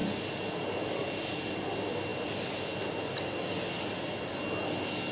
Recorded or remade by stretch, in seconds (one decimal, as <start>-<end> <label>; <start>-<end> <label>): 0.0-5.1 recorded